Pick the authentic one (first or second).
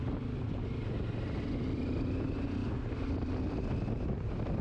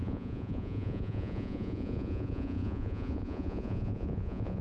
first